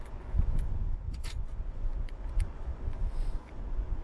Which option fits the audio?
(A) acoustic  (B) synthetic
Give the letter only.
B